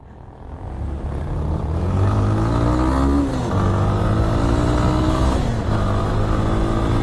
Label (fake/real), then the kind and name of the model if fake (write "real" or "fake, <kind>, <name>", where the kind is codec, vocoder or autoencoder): real